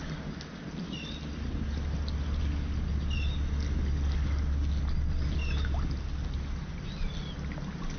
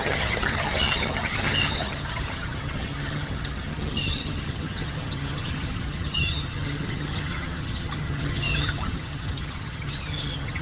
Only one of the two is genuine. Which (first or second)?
first